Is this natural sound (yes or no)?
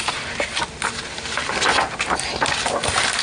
yes